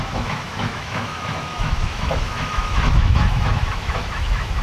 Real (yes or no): no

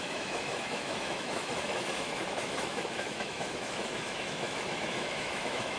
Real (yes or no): no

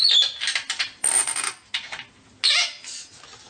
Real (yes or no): yes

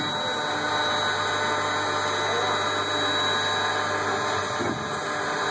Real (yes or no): yes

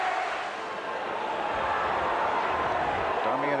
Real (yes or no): yes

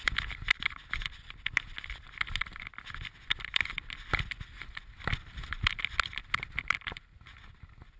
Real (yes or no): yes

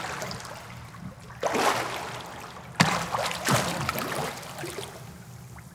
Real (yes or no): yes